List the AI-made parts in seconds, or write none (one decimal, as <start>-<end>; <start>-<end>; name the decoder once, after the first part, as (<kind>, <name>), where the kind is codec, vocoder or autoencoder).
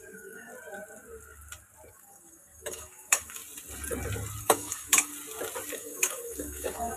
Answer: 0.0-0.5 (codec, DAC); 1.9-3.4; 4.4-5.1; 5.7-7.0